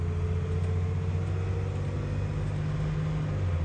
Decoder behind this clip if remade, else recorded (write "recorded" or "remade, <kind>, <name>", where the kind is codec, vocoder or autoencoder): recorded